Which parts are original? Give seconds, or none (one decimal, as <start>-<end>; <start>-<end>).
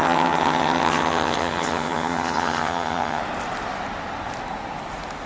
3.2-5.3